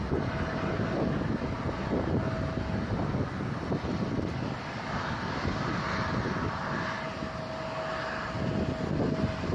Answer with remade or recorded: recorded